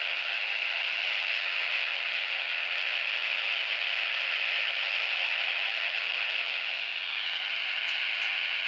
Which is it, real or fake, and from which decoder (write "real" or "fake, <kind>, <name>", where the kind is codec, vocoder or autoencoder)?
fake, vocoder, HiFi-GAN